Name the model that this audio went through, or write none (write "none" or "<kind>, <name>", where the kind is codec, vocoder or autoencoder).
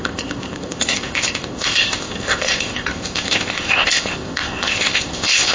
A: codec, ZipCodec